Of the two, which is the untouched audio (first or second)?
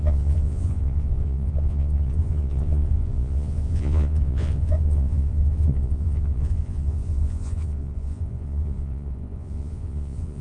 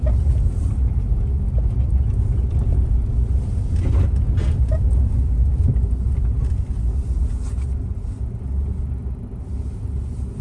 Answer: second